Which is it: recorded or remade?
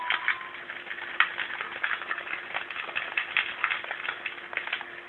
recorded